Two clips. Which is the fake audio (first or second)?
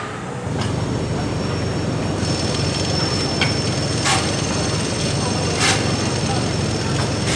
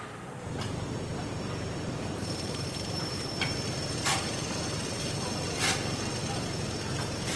second